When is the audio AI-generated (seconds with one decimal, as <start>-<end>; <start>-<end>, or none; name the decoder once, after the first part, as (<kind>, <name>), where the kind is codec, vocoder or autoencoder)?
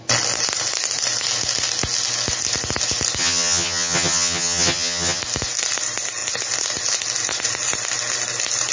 3.2-5.2 (vocoder, HiFi-GAN)